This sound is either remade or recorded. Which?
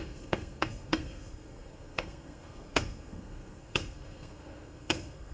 remade